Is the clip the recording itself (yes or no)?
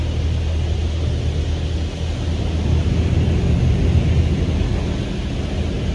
yes